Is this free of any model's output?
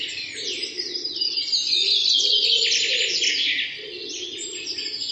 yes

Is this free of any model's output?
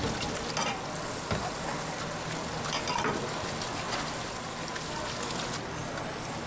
yes